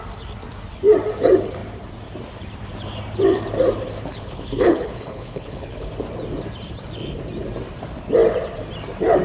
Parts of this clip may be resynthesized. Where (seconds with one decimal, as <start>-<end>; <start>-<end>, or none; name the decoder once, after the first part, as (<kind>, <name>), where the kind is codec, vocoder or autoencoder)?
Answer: 4.1-5.9 (codec, HILCodec)